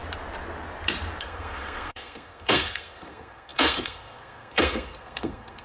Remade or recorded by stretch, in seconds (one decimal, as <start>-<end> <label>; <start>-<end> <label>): 0.0-1.2 recorded; 1.2-5.6 remade